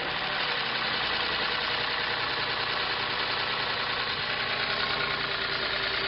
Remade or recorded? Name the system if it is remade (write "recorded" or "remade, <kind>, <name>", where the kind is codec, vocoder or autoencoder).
recorded